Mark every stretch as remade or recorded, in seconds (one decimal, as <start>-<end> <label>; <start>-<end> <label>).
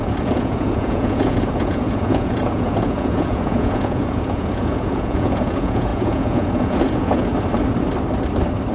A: 0.0-7.3 remade; 7.3-8.7 recorded